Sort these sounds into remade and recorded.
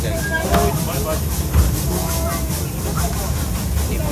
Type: recorded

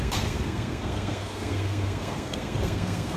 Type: remade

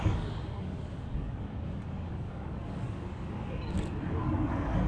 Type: remade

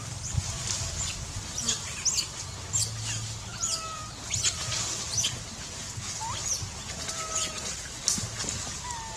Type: recorded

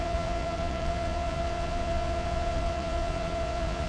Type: remade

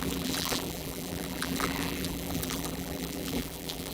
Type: remade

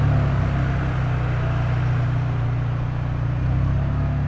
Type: recorded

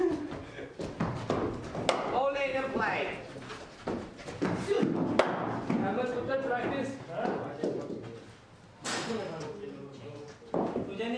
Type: recorded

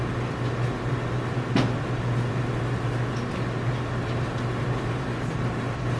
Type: recorded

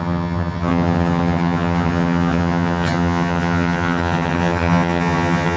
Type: remade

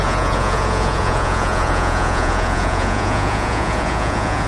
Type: remade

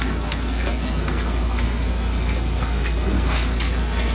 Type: remade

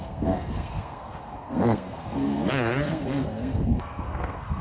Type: remade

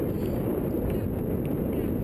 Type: recorded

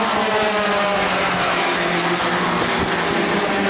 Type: recorded